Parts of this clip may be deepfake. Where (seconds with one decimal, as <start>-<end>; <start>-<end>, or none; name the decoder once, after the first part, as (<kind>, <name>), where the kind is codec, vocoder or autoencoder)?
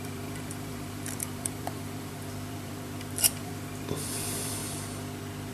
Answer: 0.0-4.6 (vocoder, BigVGAN v2)